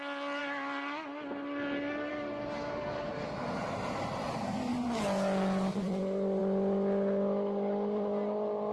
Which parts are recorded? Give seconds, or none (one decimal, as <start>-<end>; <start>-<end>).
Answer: 0.0-8.7